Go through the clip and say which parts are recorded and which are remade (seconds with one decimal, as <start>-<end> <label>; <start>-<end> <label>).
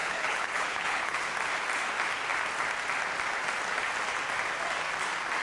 0.0-1.2 remade; 1.2-5.4 recorded